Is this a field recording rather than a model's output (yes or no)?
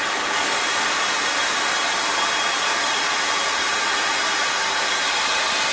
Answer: yes